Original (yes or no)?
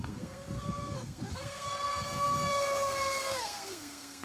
no